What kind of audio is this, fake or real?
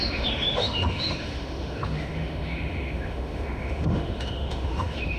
fake